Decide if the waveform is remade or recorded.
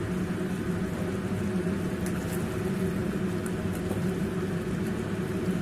recorded